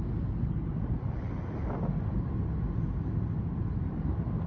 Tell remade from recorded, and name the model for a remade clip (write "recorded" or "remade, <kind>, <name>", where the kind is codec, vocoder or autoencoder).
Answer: recorded